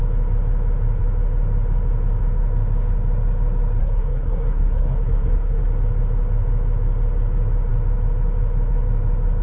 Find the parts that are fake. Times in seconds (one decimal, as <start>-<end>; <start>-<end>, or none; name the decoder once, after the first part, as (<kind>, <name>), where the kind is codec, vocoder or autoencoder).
3.8-5.6 (codec, SNAC)

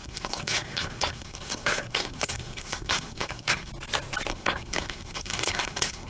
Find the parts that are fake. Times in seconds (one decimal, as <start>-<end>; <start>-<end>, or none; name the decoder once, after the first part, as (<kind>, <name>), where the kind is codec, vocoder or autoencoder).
0.0-3.7 (codec, SNAC); 4.3-6.1